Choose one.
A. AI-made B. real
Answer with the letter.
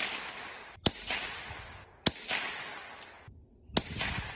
B